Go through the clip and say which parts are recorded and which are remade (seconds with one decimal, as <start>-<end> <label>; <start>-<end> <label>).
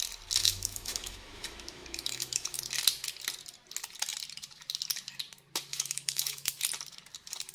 0.0-0.4 recorded; 0.4-2.6 remade; 2.6-5.7 recorded; 5.7-6.5 remade; 6.5-7.5 recorded